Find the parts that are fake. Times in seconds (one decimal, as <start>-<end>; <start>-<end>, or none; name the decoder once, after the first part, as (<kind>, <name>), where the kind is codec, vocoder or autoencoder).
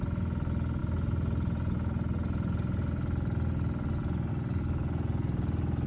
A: none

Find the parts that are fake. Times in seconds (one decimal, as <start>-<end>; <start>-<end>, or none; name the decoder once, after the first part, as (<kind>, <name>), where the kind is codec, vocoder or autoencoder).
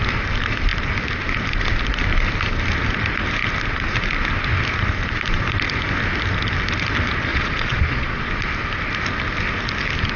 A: 7.3-8.3 (vocoder, Vocos)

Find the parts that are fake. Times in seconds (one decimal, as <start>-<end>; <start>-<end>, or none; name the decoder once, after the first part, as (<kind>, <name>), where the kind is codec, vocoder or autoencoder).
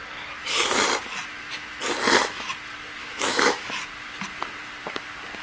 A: 3.0-3.8 (autoencoder, DAC-VAE)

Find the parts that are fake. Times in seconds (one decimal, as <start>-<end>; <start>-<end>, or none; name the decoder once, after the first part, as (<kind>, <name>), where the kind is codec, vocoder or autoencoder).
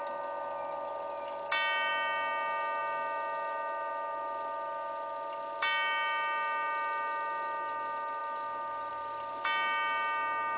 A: none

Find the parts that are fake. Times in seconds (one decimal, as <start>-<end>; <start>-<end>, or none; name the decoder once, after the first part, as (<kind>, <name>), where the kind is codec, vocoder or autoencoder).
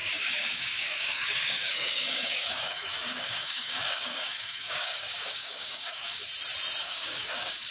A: 0.0-6.3 (codec, DAC); 6.8-7.7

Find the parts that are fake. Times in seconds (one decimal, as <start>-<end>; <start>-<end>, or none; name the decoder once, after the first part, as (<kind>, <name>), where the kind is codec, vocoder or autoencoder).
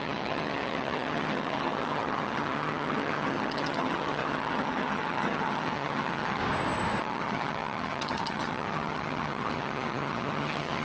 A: 0.0-6.4 (vocoder, HiFi-GAN); 7.0-10.8